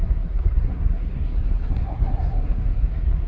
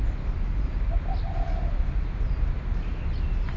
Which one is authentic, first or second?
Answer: second